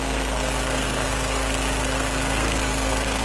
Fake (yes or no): yes